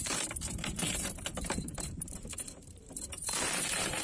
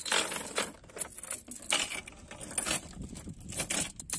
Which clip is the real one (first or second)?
second